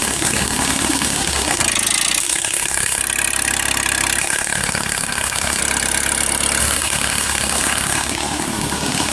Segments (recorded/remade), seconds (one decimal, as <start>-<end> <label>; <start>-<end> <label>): 0.0-1.6 remade; 1.6-2.2 recorded; 2.2-3.0 remade; 3.0-4.2 recorded; 4.2-5.6 remade; 5.6-6.6 recorded; 6.6-9.1 remade